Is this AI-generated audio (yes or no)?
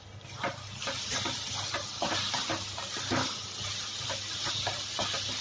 no